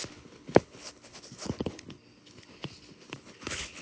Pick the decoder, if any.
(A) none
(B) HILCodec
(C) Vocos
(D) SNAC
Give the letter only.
B